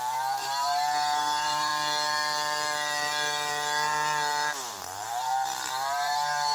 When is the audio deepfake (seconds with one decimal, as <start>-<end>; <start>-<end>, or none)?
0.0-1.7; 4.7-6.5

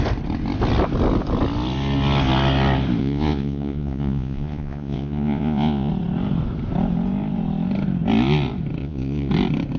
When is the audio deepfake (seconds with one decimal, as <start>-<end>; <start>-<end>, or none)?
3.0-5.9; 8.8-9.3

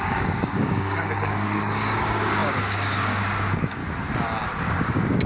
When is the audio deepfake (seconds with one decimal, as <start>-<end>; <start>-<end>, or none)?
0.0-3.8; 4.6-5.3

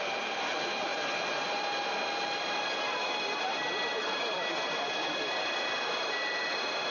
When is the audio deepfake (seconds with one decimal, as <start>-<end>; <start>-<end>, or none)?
none